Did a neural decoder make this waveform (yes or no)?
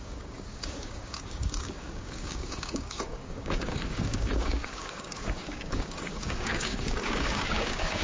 yes